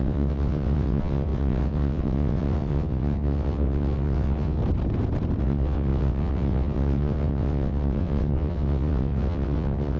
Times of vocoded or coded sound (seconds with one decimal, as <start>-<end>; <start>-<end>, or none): 0.0-4.6; 5.4-10.0

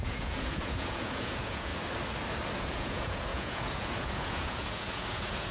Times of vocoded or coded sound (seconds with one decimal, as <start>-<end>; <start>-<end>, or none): 0.0-1.7; 2.6-5.5

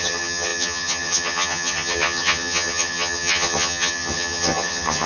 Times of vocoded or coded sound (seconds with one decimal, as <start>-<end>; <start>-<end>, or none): 0.0-5.1

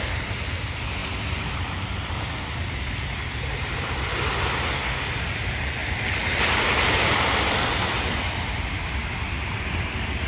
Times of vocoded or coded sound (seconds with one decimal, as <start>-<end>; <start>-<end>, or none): none

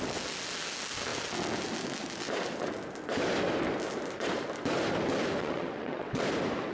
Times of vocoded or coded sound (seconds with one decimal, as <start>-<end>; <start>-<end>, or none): 5.4-6.2